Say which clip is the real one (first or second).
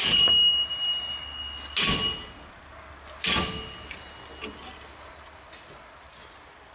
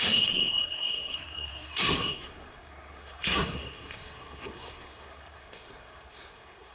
first